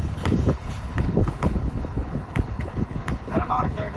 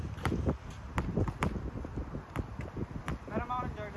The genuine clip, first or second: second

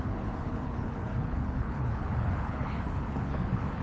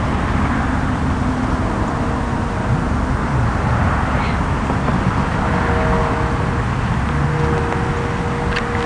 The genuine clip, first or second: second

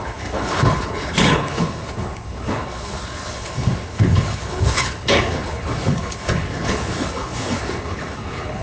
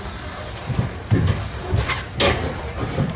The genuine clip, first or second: second